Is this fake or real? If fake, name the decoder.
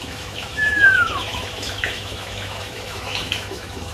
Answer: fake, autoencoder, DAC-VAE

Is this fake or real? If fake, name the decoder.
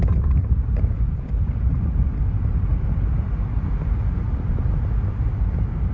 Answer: real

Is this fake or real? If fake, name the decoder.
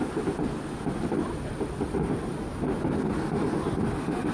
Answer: real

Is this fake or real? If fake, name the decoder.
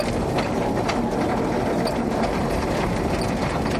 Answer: real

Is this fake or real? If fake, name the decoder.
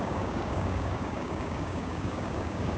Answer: fake, codec, DAC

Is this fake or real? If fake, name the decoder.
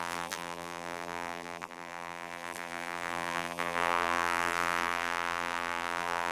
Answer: fake, vocoder, BigVGAN v2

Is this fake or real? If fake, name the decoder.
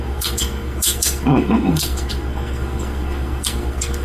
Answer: fake, codec, SNAC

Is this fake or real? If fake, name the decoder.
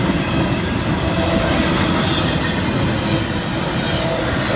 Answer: real